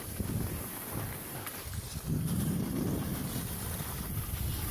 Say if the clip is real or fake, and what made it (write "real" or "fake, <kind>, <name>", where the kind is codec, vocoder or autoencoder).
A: real